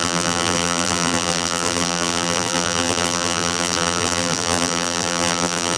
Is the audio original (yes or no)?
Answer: no